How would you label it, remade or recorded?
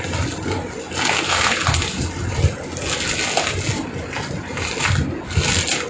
recorded